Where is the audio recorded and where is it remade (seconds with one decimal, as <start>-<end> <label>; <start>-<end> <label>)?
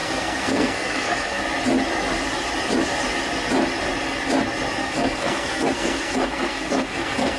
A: 0.0-1.4 remade; 1.4-4.8 recorded; 4.8-7.4 remade